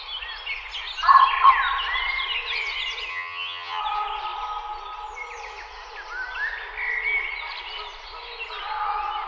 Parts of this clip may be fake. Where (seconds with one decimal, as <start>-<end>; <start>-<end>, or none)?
3.1-3.8